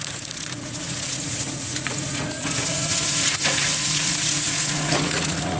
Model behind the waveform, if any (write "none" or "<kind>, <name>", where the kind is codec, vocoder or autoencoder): vocoder, Vocos